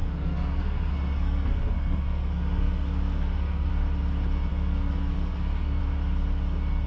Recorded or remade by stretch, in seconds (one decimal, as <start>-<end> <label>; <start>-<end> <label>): 0.0-3.7 remade; 3.7-4.5 recorded; 4.5-5.8 remade; 5.8-6.9 recorded